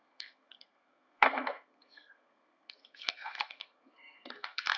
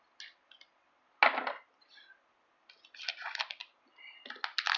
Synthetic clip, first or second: first